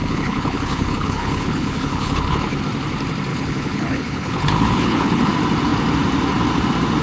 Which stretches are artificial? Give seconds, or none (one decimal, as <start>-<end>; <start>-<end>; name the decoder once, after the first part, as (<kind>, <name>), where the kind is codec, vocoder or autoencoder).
0.0-2.6 (codec, HILCodec); 3.3-5.3

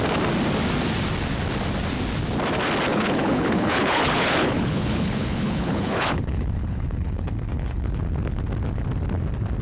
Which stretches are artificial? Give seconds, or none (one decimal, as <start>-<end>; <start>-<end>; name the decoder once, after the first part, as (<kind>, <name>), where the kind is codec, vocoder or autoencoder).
2.9-8.0 (codec, HILCodec)